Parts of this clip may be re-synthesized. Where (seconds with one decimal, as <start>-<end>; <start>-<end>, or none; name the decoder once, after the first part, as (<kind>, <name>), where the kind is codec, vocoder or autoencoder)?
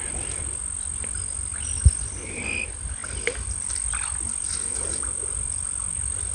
none